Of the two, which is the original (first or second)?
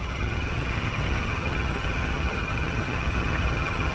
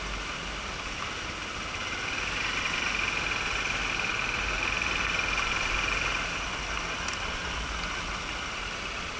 second